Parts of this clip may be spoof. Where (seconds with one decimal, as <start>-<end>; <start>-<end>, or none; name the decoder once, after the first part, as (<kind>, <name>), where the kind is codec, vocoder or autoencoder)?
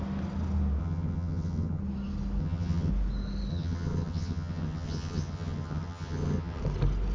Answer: 0.8-1.8 (vocoder, HiFi-GAN); 2.4-2.9; 3.5-6.6